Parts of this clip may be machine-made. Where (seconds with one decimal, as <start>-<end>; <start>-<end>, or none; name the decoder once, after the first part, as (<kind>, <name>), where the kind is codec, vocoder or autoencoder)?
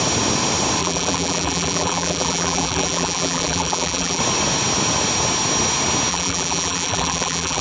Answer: 0.8-4.2 (vocoder, BigVGAN v2); 6.1-7.6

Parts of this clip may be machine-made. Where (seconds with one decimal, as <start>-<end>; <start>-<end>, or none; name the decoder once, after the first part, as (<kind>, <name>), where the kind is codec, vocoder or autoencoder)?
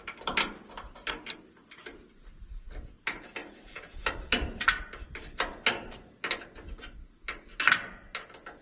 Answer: 1.9-2.5 (vocoder, BigVGAN v2); 3.4-4.8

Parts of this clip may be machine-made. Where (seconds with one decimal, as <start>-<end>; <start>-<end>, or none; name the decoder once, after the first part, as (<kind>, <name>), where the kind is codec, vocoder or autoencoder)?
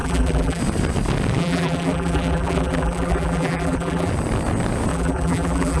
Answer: 0.0-0.6 (vocoder, BigVGAN v2); 1.4-4.1; 4.9-5.8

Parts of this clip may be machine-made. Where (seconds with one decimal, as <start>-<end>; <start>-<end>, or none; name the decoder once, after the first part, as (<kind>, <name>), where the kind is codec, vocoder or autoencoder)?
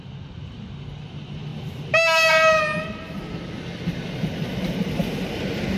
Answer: none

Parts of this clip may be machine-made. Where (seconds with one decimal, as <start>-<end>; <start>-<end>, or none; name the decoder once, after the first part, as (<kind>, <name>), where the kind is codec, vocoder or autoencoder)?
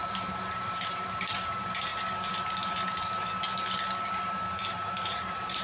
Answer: 0.0-1.9 (vocoder, BigVGAN v2); 4.7-5.6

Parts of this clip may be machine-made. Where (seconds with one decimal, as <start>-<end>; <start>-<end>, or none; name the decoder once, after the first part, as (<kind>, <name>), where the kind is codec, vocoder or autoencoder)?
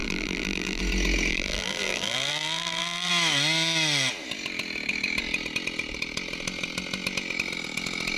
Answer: 0.0-0.8 (vocoder, BigVGAN v2); 1.3-3.1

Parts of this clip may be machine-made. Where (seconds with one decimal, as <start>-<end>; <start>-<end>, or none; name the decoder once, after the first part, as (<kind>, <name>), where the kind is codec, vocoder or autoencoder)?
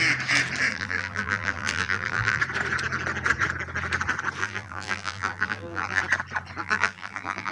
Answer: 0.7-2.4 (vocoder, BigVGAN v2); 4.4-6.0; 6.6-7.5